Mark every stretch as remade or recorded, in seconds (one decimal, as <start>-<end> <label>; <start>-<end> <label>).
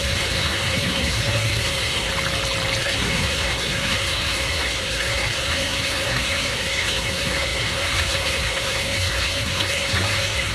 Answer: 0.0-2.1 remade; 2.1-2.8 recorded; 2.8-10.5 remade